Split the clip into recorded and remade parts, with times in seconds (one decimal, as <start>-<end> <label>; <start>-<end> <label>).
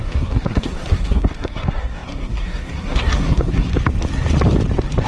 0.0-3.7 remade; 3.7-5.1 recorded